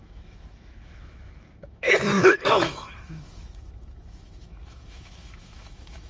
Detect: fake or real fake